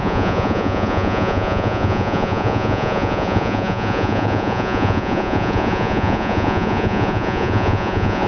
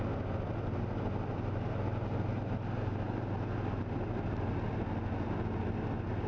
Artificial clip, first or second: first